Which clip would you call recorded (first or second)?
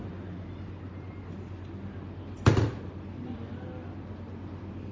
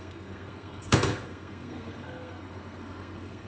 first